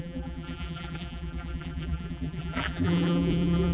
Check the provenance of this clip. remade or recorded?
remade